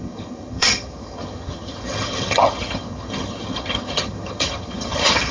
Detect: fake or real fake